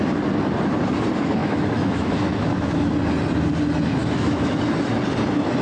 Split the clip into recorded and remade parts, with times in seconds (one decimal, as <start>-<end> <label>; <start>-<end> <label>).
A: 0.0-1.4 recorded; 1.4-2.9 remade; 2.9-4.0 recorded; 4.0-4.6 remade; 4.6-5.6 recorded